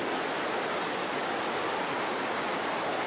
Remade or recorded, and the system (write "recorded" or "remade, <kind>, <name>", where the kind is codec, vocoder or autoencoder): recorded